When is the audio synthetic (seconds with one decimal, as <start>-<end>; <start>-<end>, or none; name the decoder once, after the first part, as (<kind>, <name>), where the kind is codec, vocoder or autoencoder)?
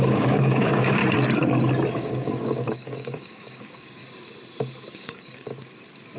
0.0-1.0 (codec, DAC); 1.9-4.0; 4.9-5.5